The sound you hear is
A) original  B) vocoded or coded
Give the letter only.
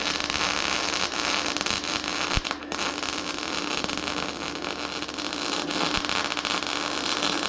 A